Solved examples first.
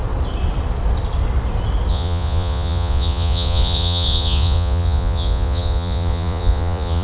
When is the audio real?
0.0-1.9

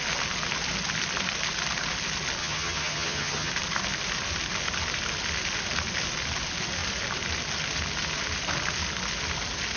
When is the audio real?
0.0-2.4; 3.5-9.8

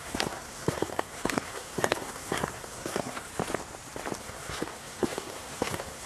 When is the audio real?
3.3-4.2